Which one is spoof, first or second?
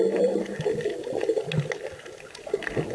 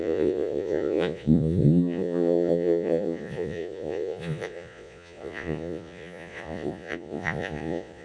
second